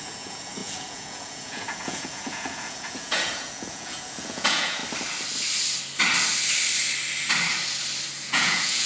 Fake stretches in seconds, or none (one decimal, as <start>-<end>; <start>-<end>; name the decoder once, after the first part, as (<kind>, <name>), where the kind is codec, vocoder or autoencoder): 0.0-4.8 (vocoder, Vocos); 8.2-8.9